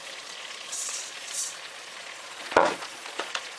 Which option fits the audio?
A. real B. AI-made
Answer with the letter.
B